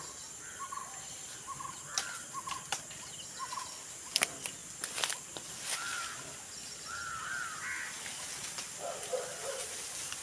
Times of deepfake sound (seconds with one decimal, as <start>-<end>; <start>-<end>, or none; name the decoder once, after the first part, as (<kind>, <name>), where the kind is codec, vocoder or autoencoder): none